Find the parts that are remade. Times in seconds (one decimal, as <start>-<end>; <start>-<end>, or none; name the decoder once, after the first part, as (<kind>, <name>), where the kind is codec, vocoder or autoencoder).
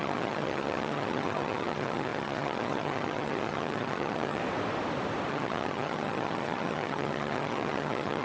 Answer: 0.0-4.4 (vocoder, HiFi-GAN); 5.3-8.2